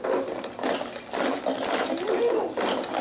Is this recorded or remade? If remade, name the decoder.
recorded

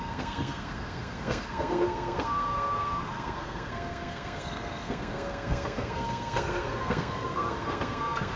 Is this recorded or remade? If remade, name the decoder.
remade, codec, SNAC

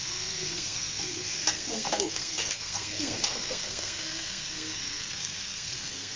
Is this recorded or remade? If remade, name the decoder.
remade, codec, SNAC